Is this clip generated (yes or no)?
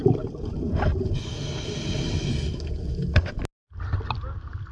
no